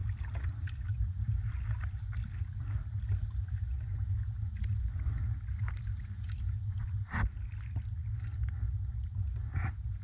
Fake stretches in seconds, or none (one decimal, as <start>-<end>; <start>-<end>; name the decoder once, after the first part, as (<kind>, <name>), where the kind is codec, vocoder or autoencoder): none